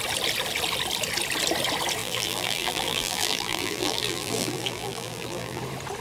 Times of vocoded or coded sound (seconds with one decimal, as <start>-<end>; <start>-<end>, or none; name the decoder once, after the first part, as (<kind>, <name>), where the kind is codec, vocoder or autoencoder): 2.0-5.6 (vocoder, BigVGAN v2)